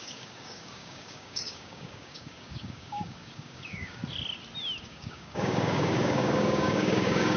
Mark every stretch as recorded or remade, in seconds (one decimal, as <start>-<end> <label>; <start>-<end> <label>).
0.0-4.0 remade; 4.0-4.8 recorded; 4.8-7.4 remade